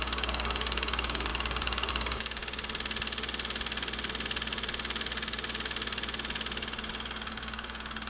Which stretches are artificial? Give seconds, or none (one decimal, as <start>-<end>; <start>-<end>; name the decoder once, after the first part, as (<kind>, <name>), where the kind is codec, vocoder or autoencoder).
0.0-2.4 (codec, DAC); 7.3-8.1